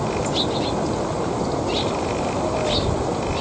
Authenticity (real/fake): real